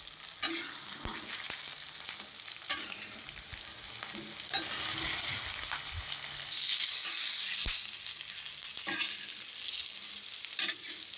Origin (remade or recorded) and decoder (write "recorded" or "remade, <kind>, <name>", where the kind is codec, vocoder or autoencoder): recorded